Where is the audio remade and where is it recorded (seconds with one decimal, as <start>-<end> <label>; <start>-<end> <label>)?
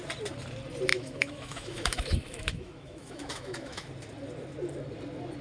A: 0.0-0.9 recorded; 0.9-3.9 remade; 3.9-5.4 recorded